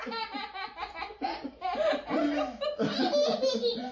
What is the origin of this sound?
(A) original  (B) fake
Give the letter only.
A